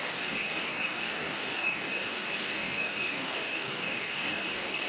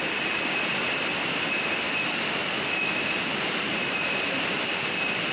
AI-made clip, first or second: first